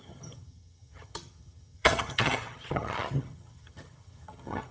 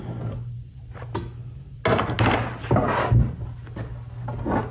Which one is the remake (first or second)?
first